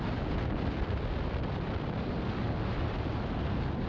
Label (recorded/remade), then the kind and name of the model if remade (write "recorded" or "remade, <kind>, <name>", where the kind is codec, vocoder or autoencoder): recorded